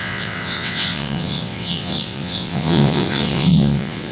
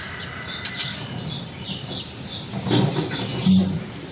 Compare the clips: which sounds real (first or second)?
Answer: second